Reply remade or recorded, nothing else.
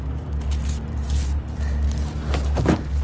recorded